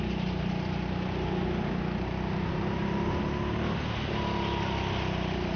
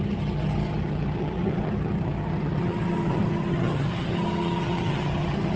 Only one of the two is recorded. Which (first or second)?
first